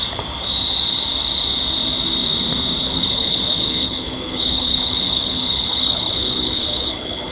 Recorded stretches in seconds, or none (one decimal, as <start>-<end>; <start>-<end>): 0.0-2.8